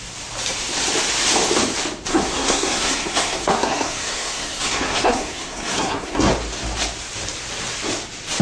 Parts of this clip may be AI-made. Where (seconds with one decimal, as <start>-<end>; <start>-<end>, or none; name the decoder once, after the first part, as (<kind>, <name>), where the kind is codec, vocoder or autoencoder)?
2.1-6.3 (codec, SNAC)